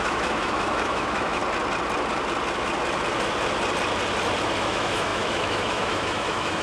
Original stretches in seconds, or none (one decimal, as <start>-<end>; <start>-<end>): 1.4-4.6